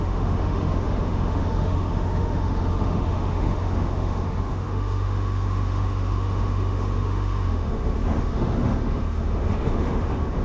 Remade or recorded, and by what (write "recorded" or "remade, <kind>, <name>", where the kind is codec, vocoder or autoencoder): remade, autoencoder, DAC-VAE